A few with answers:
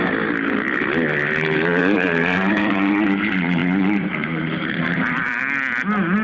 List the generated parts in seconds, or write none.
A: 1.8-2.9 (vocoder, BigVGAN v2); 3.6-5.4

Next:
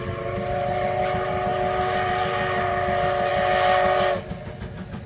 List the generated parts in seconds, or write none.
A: none

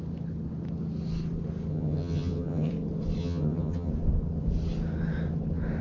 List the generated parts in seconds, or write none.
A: 1.7-2.7 (vocoder, HiFi-GAN); 3.2-3.9

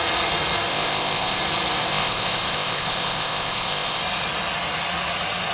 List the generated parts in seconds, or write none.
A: 0.7-1.4 (codec, ZipCodec); 1.9-4.0

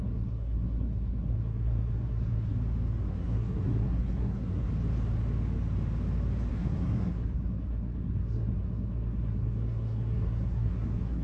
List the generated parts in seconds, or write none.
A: 0.0-2.5 (codec, SNAC); 3.1-4.7; 6.5-11.2

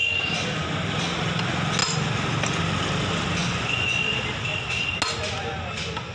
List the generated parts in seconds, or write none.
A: 3.4-4.0 (vocoder, Vocos)

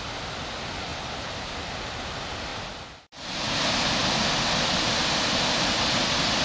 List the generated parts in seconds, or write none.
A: none